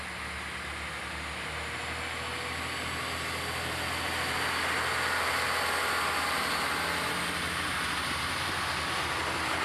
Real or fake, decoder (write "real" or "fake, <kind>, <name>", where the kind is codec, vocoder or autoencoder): real